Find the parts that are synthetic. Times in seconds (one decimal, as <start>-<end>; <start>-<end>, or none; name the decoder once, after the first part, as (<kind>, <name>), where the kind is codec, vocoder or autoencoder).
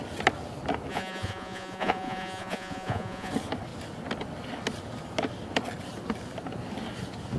0.9-3.3 (vocoder, Vocos)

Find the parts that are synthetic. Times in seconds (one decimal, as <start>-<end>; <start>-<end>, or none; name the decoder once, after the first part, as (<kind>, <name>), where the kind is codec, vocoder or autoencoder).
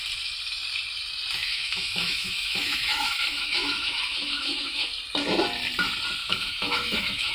1.4-4.9 (autoencoder, DAC-VAE); 6.2-7.3